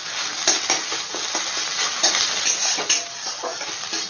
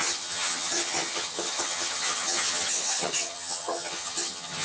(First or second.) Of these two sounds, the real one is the first